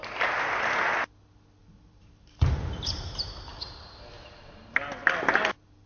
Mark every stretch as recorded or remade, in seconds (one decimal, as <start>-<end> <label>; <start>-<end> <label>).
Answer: 0.0-1.6 recorded; 1.6-4.0 remade; 4.0-5.9 recorded